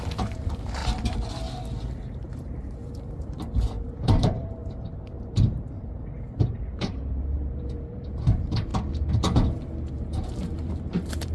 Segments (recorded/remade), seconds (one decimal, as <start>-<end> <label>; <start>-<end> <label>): 0.0-0.8 remade; 0.8-1.9 recorded; 1.9-8.7 remade; 8.7-9.9 recorded; 9.9-11.3 remade

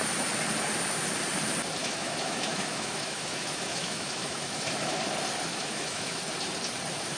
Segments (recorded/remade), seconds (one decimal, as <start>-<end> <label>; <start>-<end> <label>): 0.0-1.8 recorded; 1.8-5.0 remade; 5.0-5.5 recorded; 5.5-6.2 remade; 6.2-7.2 recorded

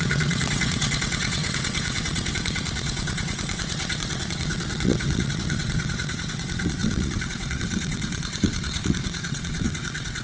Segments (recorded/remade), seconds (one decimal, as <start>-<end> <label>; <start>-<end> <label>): 0.0-10.2 remade

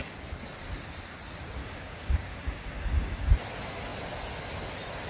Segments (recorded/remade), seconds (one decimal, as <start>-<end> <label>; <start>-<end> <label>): 0.0-1.6 recorded; 1.6-3.3 remade; 3.3-5.1 recorded

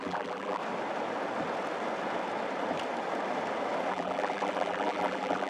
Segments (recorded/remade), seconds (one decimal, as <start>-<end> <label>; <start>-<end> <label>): 0.0-0.6 remade; 0.6-3.9 recorded; 3.9-5.5 remade

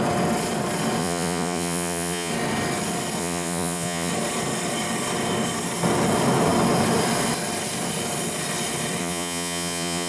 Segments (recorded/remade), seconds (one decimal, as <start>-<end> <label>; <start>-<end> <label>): 0.0-1.0 recorded; 1.0-2.3 remade; 2.3-3.2 recorded; 3.2-4.1 remade; 4.1-9.0 recorded; 9.0-10.1 remade

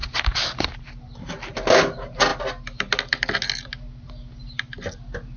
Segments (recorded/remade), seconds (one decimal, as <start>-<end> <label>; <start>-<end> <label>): 0.0-5.4 recorded

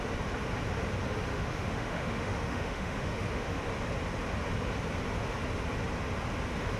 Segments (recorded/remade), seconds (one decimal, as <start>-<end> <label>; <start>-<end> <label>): 0.0-1.3 recorded; 1.3-3.6 remade; 3.6-6.8 recorded